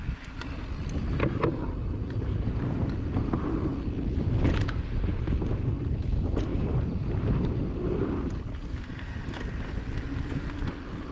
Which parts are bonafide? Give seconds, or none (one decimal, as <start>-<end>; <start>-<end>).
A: 0.0-1.8; 2.6-6.5; 7.6-11.1